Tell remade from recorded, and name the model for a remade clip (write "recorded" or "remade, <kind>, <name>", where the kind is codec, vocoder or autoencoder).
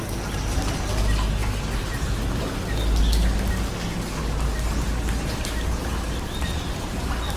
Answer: recorded